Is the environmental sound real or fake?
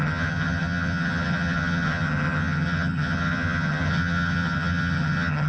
fake